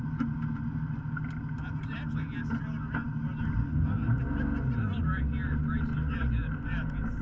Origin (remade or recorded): recorded